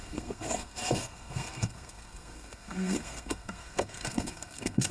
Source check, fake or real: fake